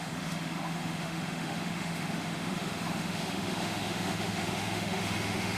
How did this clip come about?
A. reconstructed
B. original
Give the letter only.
A